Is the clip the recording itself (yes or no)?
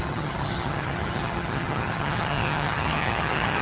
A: no